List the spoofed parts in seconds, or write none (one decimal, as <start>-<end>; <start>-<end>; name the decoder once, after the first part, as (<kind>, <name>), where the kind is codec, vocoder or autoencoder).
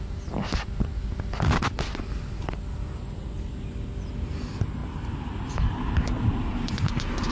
none